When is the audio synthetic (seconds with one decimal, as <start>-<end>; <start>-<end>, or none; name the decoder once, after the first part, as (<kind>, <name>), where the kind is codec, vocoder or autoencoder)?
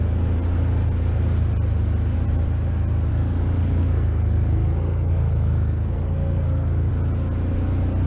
3.1-6.9 (codec, SNAC)